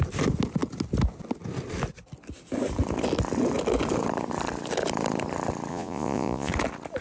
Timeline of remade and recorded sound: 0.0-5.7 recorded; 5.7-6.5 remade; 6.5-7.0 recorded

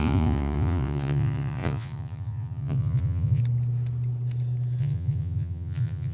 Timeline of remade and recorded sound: 0.0-3.4 remade; 3.4-4.8 recorded; 4.8-6.1 remade

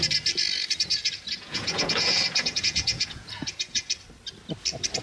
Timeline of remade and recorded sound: 0.0-0.9 recorded; 0.9-3.9 remade; 3.9-5.0 recorded